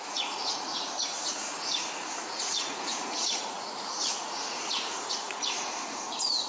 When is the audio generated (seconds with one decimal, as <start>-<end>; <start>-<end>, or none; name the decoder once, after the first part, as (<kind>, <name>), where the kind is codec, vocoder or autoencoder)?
0.0-6.5 (vocoder, Vocos)